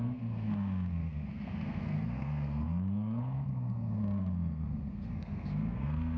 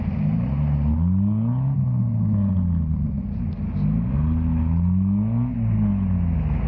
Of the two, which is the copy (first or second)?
first